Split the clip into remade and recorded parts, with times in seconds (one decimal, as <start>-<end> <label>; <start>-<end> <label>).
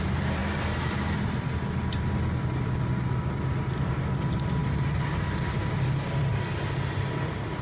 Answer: 0.0-4.6 recorded; 4.6-6.3 remade; 6.3-7.6 recorded